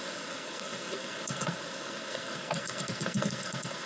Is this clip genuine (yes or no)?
no